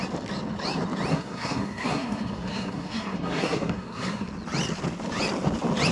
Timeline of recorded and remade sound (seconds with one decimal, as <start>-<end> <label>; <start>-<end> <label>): 0.0-1.1 recorded; 1.1-4.3 remade; 4.3-5.9 recorded